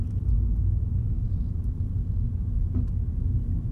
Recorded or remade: recorded